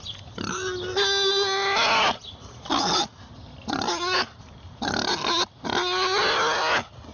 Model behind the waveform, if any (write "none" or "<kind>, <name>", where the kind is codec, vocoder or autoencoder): none